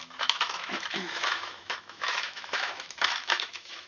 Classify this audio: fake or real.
fake